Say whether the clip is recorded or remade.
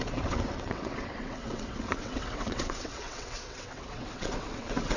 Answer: remade